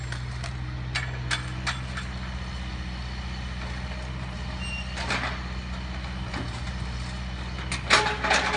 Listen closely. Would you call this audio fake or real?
real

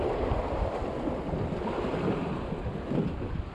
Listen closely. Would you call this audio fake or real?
real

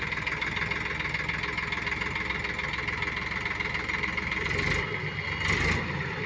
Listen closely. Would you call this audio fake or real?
real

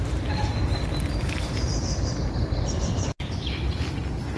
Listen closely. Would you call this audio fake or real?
real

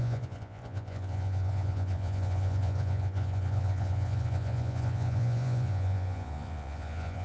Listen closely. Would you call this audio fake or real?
fake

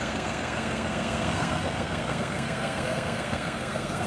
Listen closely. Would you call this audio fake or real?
fake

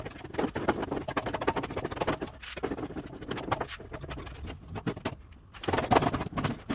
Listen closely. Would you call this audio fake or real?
real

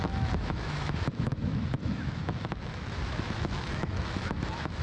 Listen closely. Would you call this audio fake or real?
fake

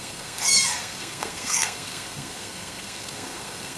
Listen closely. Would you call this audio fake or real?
fake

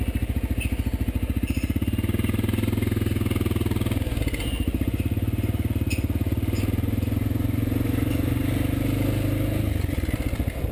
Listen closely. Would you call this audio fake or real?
real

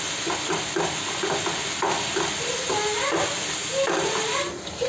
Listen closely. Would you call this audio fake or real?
real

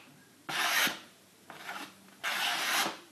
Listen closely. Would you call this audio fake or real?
real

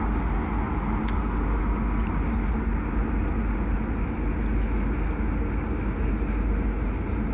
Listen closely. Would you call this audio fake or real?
real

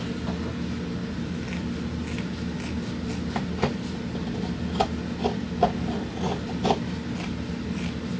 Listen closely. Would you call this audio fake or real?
real